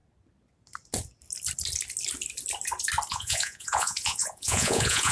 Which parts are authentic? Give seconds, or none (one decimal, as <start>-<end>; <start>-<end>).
0.0-3.1